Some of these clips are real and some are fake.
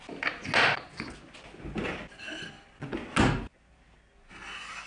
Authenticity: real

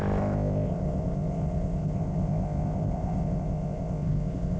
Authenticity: fake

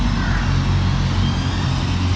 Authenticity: real